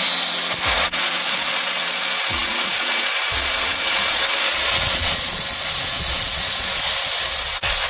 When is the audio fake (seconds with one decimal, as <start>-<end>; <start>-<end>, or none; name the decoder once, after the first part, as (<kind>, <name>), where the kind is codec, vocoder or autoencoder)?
0.8-7.9 (vocoder, Vocos)